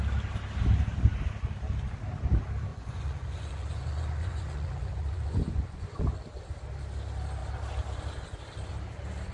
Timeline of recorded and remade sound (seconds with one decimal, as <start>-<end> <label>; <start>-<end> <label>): 0.0-2.7 recorded; 2.7-6.0 remade; 6.0-9.3 recorded